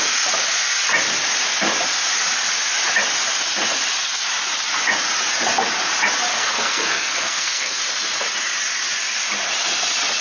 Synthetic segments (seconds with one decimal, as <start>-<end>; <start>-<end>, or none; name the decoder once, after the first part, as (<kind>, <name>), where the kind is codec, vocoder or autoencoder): 6.3-7.8 (codec, SNAC)